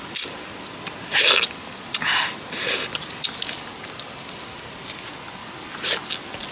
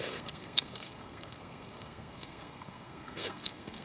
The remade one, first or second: second